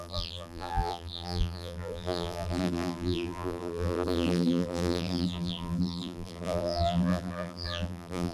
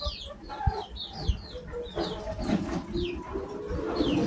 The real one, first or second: second